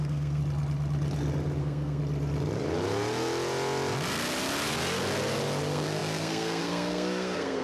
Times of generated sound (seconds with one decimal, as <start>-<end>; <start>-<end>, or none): 0.0-0.4; 1.6-2.0; 5.6-7.6